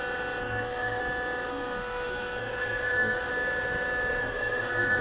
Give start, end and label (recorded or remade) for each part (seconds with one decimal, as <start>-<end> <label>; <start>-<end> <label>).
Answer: 0.0-0.4 recorded; 0.4-1.0 remade; 1.0-1.5 recorded; 1.5-3.3 remade; 3.3-4.2 recorded; 4.2-5.0 remade

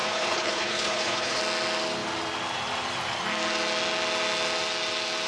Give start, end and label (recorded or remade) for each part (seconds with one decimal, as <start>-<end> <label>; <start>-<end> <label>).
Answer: 0.0-1.4 remade; 1.4-5.3 recorded

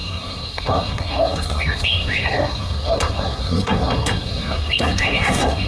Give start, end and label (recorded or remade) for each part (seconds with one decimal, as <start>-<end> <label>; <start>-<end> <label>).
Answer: 0.0-5.7 remade

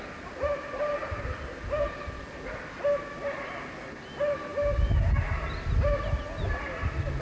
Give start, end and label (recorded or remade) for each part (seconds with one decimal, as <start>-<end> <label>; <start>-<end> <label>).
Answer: 0.0-7.2 recorded